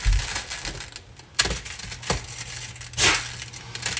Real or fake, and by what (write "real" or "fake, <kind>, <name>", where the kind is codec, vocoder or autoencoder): real